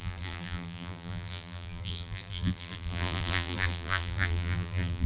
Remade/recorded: remade